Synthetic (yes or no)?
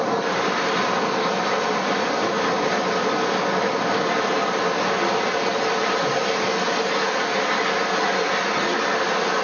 no